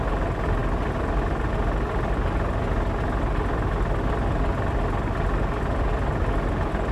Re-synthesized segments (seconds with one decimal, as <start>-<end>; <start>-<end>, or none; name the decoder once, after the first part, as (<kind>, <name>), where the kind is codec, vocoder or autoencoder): none